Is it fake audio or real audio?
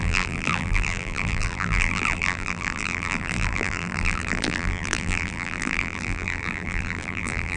fake